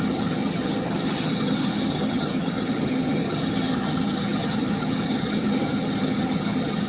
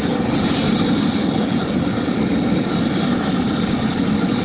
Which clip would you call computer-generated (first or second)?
first